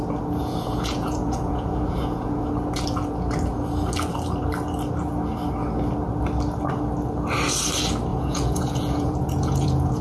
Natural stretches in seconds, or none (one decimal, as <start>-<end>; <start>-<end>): 0.0-0.4; 2.4-8.1

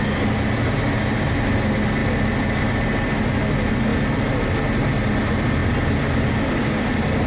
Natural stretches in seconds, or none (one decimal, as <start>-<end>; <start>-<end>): 0.0-7.3

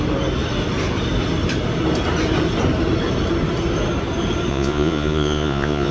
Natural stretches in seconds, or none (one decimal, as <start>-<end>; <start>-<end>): 0.0-4.5

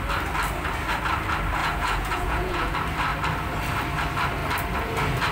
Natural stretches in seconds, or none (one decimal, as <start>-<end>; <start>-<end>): 0.0-1.6; 2.7-5.3